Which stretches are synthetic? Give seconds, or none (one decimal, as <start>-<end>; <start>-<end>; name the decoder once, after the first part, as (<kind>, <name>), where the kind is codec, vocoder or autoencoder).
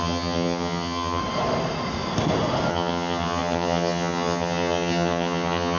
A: 0.0-1.2 (vocoder, HiFi-GAN); 2.7-5.8